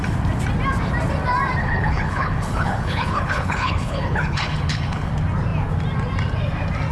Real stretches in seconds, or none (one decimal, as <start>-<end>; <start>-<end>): 0.0-1.6; 5.1-6.9

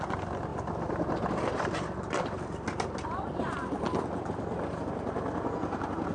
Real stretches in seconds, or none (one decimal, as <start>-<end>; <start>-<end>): 0.0-6.1